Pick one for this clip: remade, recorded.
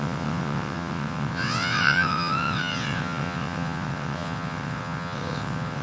remade